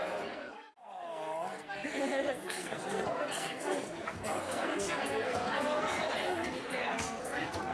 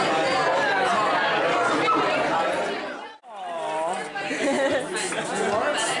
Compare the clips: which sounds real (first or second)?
second